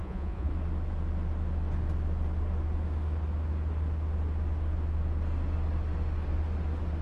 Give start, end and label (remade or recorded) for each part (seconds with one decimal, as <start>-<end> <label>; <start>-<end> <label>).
0.0-0.5 remade; 0.5-7.0 recorded